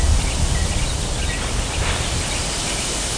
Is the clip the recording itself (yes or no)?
yes